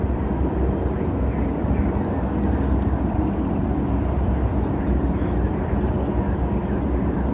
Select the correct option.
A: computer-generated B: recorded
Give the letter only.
B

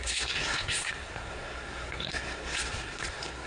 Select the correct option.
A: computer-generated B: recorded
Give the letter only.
A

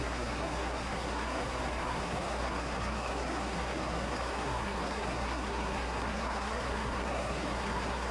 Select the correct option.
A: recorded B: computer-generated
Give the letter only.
B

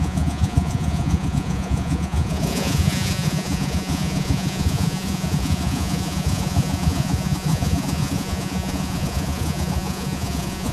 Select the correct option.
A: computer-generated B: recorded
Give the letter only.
A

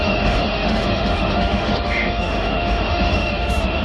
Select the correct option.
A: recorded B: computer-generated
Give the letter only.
B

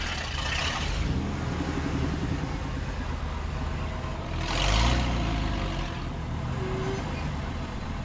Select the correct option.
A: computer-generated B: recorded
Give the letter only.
B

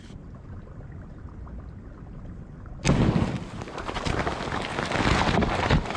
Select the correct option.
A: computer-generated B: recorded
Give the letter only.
B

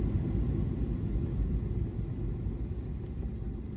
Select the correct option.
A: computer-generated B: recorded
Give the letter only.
B